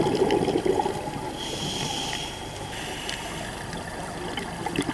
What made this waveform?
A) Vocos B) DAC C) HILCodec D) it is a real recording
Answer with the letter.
D